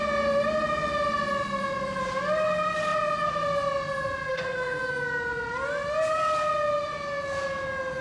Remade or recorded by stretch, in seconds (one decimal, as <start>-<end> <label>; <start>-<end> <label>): 0.0-4.3 recorded; 4.3-4.9 remade; 4.9-8.0 recorded

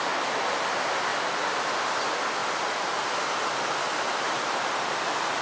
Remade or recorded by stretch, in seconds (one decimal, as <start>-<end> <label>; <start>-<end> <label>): 0.0-5.4 recorded